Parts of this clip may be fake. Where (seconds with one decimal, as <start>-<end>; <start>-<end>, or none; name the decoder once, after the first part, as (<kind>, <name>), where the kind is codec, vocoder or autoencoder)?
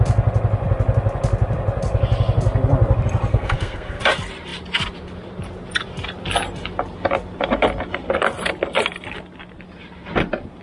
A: 3.3-4.0 (codec, SNAC)